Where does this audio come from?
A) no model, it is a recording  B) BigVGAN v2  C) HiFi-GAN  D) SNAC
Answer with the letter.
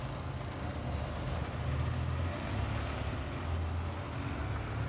A